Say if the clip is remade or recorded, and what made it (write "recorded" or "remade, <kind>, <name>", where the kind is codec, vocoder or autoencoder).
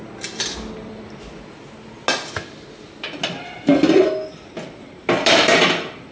recorded